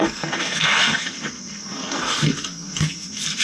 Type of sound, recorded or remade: remade